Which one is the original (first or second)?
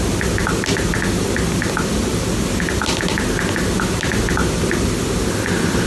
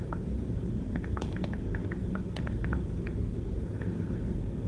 first